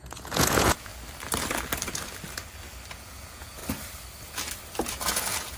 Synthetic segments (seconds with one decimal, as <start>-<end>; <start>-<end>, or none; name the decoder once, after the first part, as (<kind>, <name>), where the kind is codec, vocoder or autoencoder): 0.0-0.9 (vocoder, Vocos); 2.9-3.6; 4.9-5.6